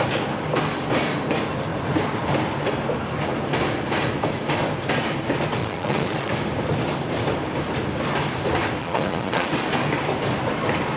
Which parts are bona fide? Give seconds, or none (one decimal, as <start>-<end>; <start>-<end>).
0.0-5.6; 6.3-8.8; 9.5-11.0